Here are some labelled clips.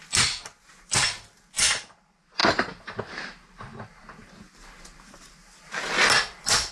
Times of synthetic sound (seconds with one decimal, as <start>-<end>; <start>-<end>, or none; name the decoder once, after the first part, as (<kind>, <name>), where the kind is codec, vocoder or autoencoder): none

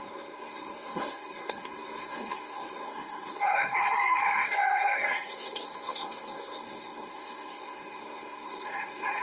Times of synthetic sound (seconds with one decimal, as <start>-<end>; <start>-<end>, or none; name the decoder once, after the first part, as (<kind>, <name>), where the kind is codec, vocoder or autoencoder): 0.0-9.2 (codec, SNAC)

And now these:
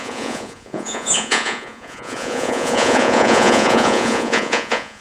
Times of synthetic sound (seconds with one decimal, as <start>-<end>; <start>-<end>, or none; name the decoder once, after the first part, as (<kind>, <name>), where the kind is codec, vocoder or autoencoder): 0.0-5.0 (vocoder, Vocos)

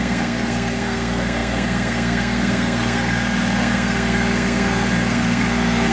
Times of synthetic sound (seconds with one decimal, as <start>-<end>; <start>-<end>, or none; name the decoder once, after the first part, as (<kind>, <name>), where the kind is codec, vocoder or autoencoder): 0.0-5.9 (codec, SNAC)

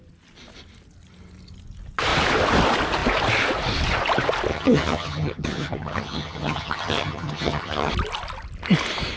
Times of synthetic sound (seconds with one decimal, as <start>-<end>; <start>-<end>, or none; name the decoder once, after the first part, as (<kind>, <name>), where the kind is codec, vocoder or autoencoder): 4.5-7.9 (vocoder, HiFi-GAN)